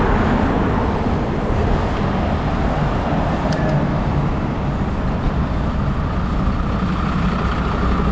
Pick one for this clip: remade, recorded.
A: recorded